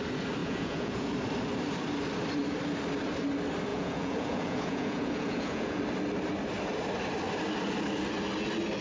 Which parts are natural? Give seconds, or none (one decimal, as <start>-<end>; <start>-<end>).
0.0-0.4; 1.1-3.7; 5.8-8.8